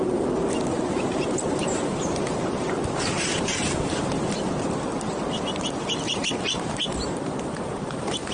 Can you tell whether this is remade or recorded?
remade